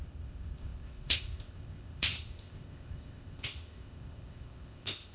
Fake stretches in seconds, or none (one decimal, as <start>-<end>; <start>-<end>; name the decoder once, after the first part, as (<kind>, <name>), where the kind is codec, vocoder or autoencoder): 0.0-5.1 (codec, ZipCodec)